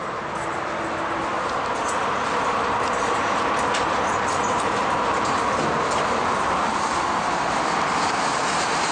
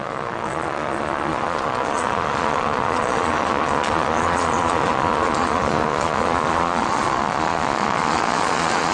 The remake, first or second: second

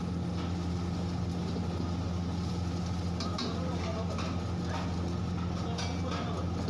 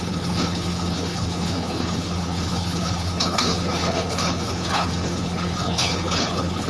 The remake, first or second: second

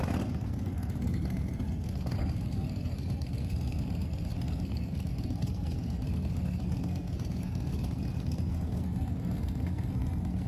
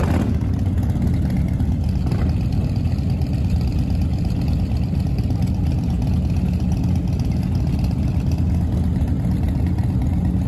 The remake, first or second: first